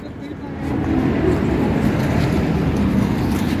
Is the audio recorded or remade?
recorded